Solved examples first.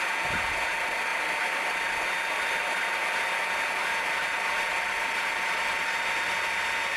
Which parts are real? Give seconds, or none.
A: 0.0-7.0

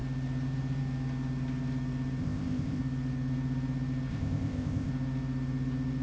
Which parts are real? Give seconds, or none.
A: 0.0-2.2; 2.8-4.1; 4.9-6.0

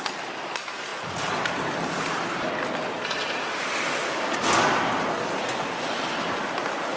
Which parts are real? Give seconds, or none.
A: 0.0-7.0

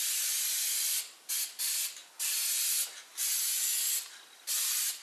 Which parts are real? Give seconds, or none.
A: 0.0-5.0

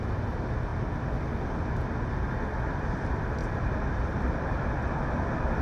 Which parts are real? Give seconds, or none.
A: 0.0-3.4; 4.7-5.6

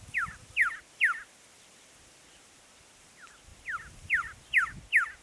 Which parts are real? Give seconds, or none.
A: 0.0-0.6; 3.1-3.5; 4.7-5.2